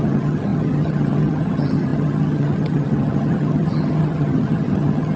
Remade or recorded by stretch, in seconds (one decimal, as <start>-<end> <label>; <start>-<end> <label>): 0.0-5.2 remade

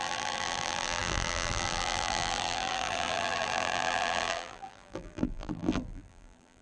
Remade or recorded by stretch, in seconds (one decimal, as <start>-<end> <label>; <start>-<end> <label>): 0.0-6.6 remade